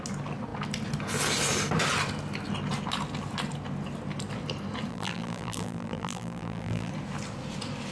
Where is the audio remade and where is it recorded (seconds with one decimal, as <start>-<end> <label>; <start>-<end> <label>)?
0.0-4.9 recorded; 4.9-6.9 remade; 6.9-7.9 recorded